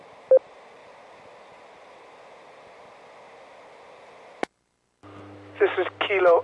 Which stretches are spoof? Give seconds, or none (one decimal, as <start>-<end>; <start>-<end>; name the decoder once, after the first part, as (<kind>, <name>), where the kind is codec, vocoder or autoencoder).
none